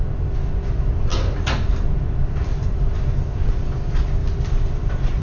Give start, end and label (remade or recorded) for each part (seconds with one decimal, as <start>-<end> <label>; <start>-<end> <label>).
0.0-4.2 recorded; 4.2-5.2 remade